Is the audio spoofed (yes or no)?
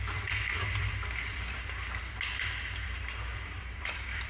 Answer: yes